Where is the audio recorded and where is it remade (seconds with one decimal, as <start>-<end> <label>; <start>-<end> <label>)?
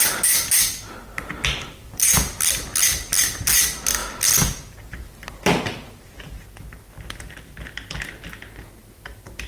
0.0-9.5 recorded